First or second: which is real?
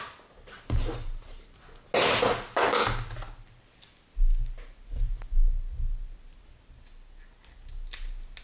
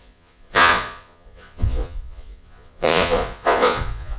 first